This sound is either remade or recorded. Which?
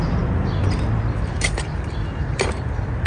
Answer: recorded